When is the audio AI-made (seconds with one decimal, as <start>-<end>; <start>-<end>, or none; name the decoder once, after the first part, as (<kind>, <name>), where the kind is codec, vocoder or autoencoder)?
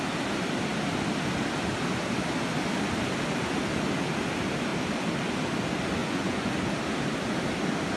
6.0-6.5 (vocoder, Vocos)